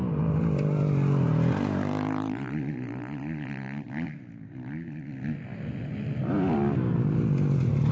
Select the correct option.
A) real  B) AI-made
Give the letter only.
A